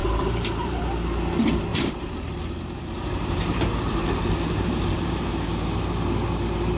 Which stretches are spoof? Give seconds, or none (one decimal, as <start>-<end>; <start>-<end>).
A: 0.0-0.8; 1.7-5.8